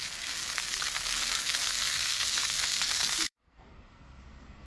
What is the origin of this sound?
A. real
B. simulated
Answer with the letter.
B